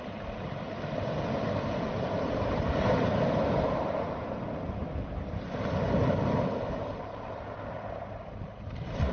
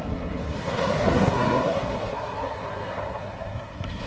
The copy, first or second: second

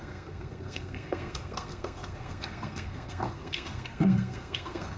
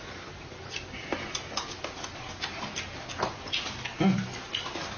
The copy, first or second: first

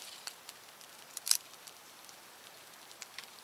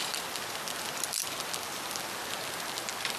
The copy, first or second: first